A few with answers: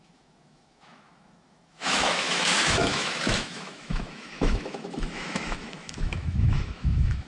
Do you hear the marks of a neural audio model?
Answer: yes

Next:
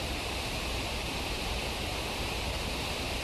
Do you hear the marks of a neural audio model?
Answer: no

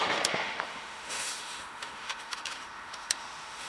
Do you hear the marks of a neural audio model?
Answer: yes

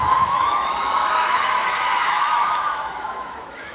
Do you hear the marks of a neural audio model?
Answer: yes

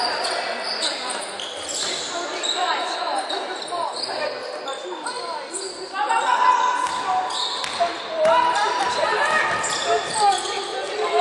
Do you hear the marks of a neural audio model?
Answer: no